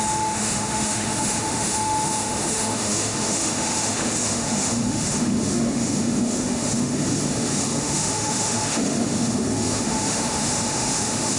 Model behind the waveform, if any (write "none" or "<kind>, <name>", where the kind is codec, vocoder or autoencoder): autoencoder, DAC-VAE